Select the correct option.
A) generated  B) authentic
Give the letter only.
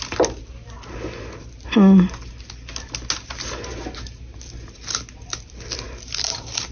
B